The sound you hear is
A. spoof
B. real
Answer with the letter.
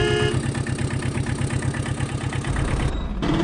B